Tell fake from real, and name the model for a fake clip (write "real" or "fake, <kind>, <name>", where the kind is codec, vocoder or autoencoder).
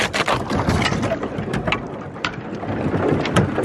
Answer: real